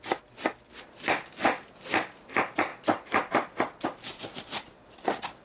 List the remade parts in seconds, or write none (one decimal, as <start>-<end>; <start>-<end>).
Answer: none

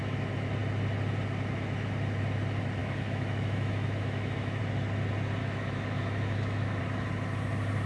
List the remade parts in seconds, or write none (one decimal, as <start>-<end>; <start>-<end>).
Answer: 2.8-4.6; 5.4-6.8